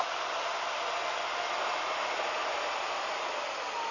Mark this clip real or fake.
real